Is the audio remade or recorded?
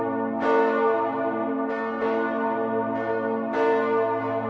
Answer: recorded